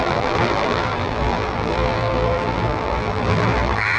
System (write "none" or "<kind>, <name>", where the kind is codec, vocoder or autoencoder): vocoder, BigVGAN v2